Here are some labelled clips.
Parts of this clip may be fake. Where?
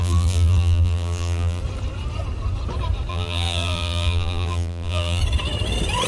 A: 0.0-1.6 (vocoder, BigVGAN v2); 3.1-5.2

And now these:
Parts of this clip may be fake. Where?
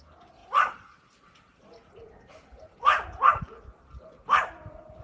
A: 0.4-3.4 (vocoder, BigVGAN v2)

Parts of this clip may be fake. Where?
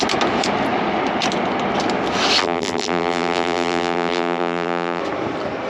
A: 2.4-5.0 (vocoder, BigVGAN v2)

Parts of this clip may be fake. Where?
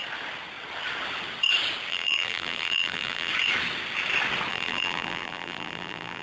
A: 1.9-3.3 (vocoder, BigVGAN v2); 4.5-6.2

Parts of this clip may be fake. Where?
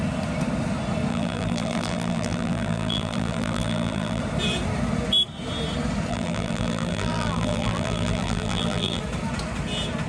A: 1.1-4.2 (vocoder, BigVGAN v2); 6.1-9.0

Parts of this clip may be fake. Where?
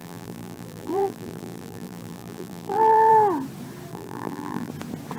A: 0.0-3.1 (vocoder, BigVGAN v2); 3.9-4.7